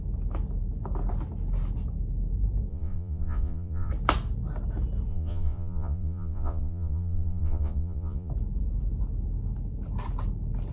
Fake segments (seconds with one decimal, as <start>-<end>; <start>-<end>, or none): 2.7-3.9; 5.1-8.3